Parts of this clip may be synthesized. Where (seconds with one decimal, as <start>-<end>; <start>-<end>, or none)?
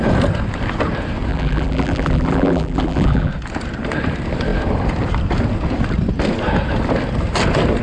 1.3-3.3